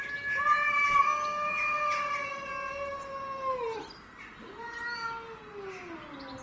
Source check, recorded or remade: recorded